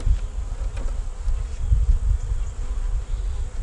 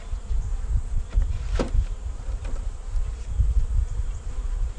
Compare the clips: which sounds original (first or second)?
first